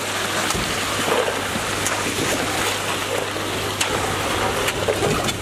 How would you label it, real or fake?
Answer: real